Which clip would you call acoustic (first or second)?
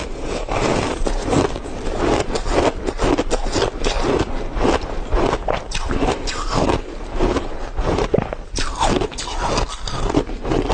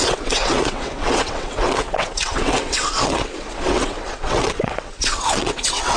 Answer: first